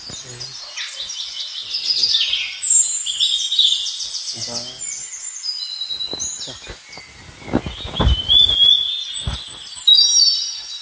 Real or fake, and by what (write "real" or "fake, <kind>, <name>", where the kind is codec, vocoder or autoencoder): real